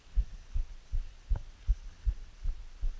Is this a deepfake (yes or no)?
no